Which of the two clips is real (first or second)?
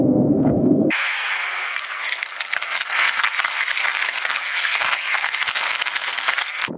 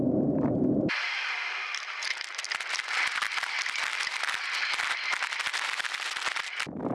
second